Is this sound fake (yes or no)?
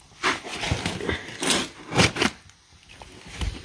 no